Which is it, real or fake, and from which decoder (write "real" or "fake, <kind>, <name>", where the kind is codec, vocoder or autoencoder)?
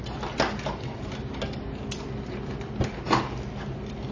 real